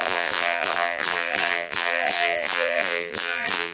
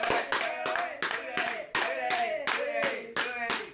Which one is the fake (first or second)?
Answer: first